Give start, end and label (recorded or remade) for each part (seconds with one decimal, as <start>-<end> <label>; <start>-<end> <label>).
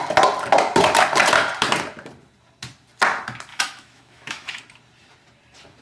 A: 0.0-3.5 recorded; 3.5-4.6 remade; 4.6-5.8 recorded